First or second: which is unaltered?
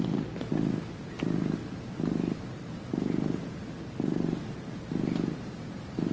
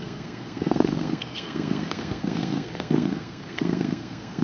first